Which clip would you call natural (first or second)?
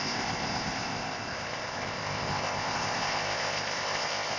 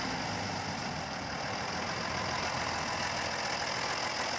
second